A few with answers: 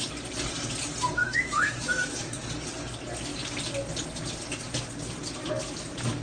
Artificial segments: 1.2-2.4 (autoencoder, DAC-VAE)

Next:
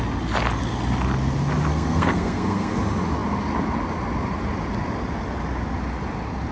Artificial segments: 1.7-2.8 (codec, SNAC)

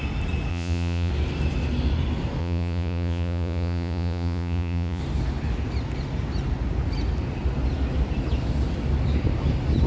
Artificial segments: 0.5-1.1 (vocoder, Vocos); 2.4-5.0

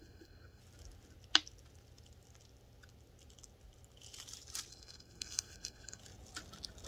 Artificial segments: 0.0-0.6 (codec, SNAC); 4.7-6.0

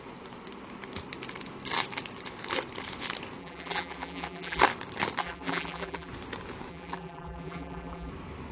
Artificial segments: 3.4-4.6 (vocoder, BigVGAN v2); 5.2-6.1; 6.7-8.1

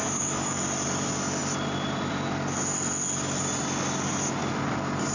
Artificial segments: 0.0-0.6 (codec, DAC)